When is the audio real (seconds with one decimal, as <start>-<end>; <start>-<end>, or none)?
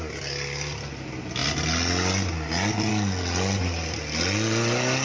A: 0.0-5.0